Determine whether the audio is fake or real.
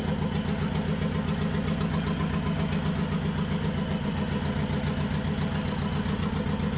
real